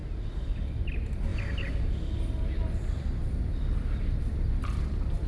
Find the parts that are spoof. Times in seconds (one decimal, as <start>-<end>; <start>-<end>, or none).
none